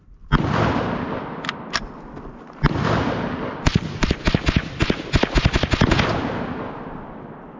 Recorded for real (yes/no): yes